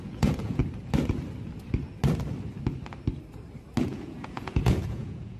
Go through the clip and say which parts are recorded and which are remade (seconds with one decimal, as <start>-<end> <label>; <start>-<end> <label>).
0.0-0.6 remade; 0.6-3.8 recorded; 3.8-5.4 remade